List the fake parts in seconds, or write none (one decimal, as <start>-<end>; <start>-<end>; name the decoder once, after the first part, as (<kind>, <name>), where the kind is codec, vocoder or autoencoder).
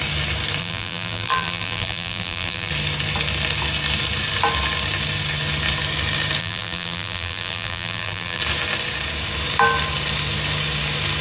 0.6-2.7 (vocoder, BigVGAN v2); 6.4-8.4